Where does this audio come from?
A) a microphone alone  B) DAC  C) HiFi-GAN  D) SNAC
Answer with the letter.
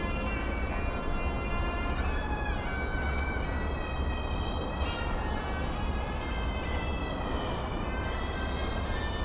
A